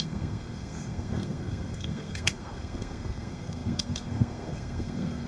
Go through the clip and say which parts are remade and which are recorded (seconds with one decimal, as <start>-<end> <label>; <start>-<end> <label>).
0.0-5.3 remade